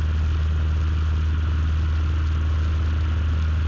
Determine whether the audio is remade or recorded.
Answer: recorded